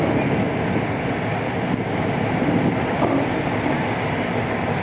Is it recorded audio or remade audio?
recorded